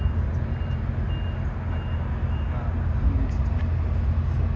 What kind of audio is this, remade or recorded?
recorded